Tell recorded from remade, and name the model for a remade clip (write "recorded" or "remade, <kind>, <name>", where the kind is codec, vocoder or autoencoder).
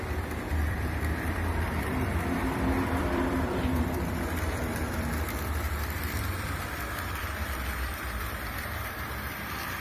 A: remade, vocoder, BigVGAN v2